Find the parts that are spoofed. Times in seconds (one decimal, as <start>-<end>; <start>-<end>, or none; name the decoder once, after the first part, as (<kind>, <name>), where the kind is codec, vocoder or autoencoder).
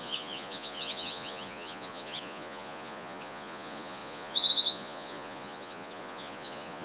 0.0-6.8 (vocoder, Vocos)